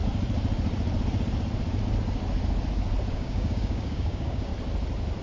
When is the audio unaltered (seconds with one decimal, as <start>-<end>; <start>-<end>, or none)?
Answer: 0.0-3.1; 4.5-5.2